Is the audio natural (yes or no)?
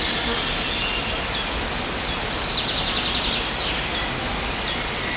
yes